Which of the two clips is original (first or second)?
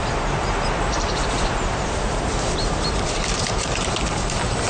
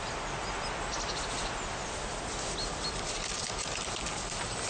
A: second